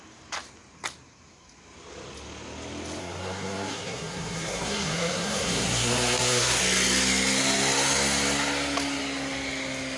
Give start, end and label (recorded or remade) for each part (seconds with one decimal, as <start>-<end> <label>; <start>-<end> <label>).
0.0-3.0 recorded; 3.0-6.6 remade; 6.6-10.0 recorded